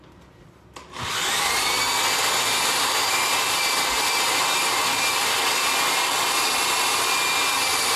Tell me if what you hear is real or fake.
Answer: real